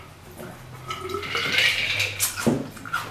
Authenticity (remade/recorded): recorded